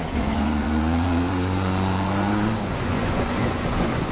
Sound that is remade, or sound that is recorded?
remade